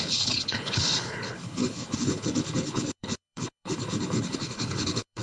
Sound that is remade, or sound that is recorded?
remade